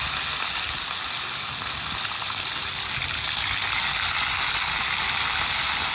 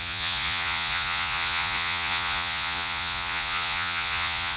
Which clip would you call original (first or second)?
first